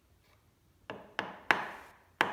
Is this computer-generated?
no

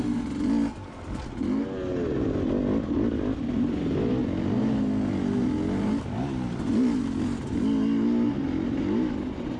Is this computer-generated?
no